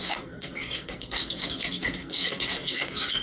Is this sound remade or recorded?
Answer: remade